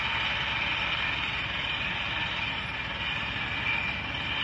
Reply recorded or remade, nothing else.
recorded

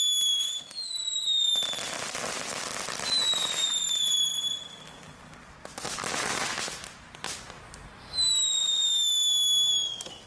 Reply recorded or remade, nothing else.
recorded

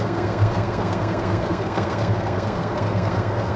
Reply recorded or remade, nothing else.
remade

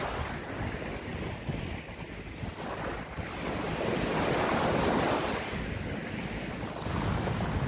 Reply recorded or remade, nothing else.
recorded